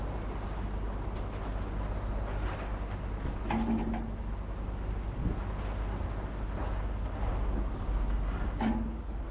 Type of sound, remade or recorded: recorded